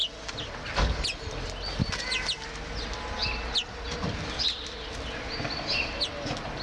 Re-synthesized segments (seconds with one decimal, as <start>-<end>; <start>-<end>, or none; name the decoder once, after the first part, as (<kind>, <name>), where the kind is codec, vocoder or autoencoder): none